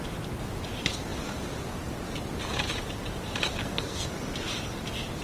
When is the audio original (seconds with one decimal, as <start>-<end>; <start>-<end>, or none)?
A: 0.0-3.6; 4.1-5.2